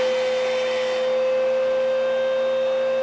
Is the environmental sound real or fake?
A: real